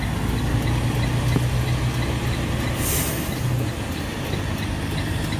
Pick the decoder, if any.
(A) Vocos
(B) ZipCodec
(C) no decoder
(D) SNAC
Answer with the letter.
C